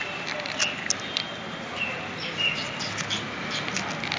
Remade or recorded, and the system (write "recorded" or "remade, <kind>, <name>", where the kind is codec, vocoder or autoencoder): recorded